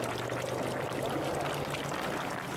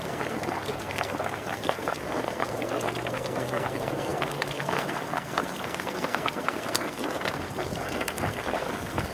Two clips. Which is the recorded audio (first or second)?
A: first